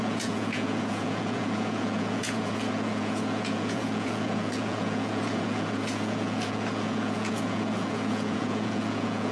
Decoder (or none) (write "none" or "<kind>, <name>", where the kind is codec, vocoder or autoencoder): vocoder, Vocos